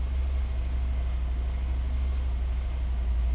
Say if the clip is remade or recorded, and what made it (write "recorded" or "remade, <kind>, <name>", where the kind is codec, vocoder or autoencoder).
recorded